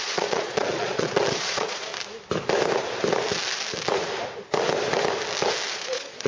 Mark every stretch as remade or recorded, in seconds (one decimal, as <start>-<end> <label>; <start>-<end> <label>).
0.0-1.9 remade; 1.9-5.7 recorded; 5.7-6.3 remade